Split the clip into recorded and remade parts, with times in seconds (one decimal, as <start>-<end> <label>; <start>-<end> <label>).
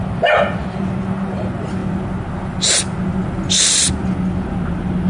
0.0-5.1 recorded